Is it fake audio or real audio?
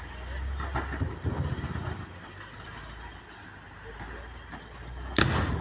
real